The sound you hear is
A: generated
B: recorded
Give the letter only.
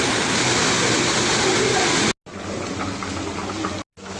B